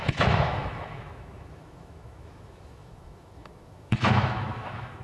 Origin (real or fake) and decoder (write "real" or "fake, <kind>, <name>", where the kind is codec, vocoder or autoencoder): fake, autoencoder, DAC-VAE